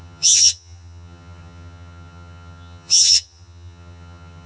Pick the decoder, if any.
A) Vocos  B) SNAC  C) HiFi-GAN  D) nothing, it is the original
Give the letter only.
C